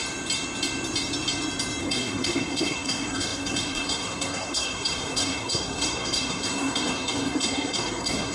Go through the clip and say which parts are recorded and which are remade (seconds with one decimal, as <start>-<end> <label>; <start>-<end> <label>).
0.0-1.8 recorded; 1.8-8.3 remade